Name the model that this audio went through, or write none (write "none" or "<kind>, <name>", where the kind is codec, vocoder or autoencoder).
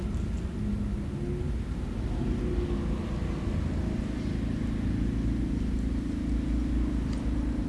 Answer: none